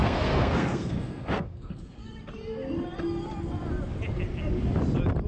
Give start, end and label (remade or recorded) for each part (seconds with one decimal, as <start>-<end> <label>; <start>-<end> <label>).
0.0-2.0 remade; 2.0-5.3 recorded